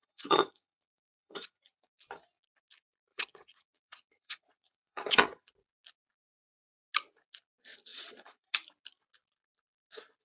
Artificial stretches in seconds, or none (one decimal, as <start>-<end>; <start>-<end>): 0.0-1.9; 3.1-5.5; 7.9-8.5